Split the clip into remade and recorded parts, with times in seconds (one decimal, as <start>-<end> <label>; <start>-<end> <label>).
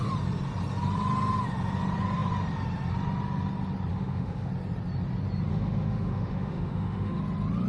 0.0-3.9 recorded; 3.9-4.5 remade; 4.5-5.5 recorded; 5.5-7.2 remade; 7.2-7.7 recorded